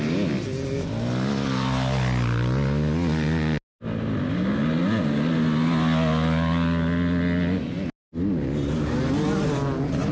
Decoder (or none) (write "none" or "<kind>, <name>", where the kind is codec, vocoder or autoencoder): none